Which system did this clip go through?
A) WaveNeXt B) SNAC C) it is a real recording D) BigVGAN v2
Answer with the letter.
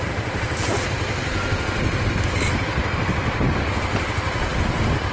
C